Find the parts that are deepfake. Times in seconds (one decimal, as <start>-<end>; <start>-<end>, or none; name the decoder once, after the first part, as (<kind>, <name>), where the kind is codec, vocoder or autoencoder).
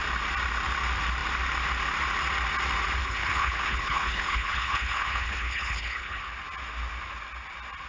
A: 3.0-6.2 (codec, HILCodec)